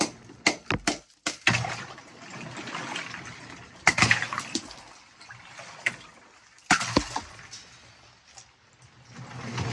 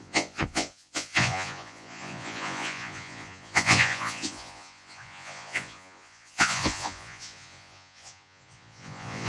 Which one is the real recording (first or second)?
first